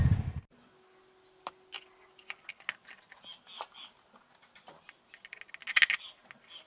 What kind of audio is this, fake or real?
real